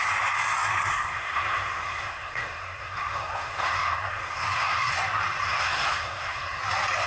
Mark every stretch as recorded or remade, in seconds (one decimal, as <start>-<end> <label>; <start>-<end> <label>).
0.0-0.9 recorded; 0.9-4.9 remade; 4.9-5.4 recorded; 5.4-6.6 remade; 6.6-7.1 recorded